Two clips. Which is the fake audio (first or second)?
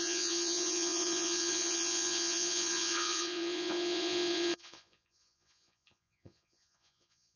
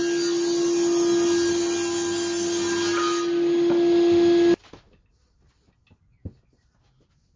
first